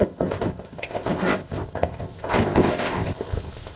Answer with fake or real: fake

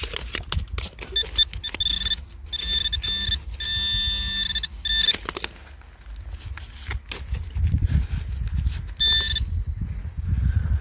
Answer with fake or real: real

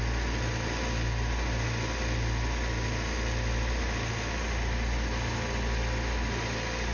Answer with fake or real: real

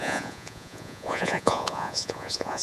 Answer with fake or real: fake